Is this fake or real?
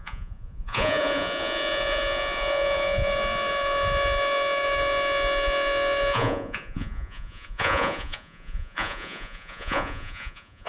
fake